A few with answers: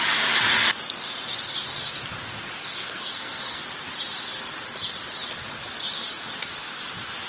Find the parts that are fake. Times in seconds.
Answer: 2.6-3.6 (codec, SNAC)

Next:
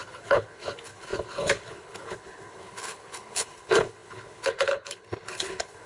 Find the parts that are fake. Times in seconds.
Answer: 0.0-5.9 (codec, HILCodec)

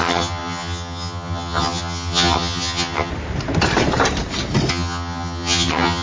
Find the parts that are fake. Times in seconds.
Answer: 0.0-3.1 (vocoder, HiFi-GAN); 4.7-6.0

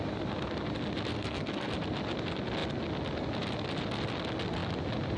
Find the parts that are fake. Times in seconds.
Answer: 1.1-1.7 (codec, SNAC)

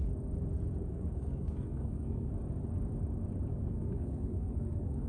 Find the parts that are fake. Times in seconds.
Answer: 0.9-2.3 (codec, SNAC); 3.5-5.1

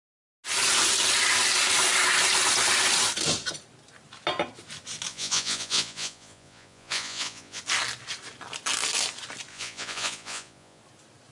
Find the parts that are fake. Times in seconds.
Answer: 5.1-7.6 (vocoder, Vocos); 9.5-10.8

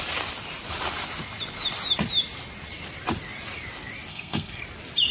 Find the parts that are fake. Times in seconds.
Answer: 4.1-4.6 (codec, SNAC)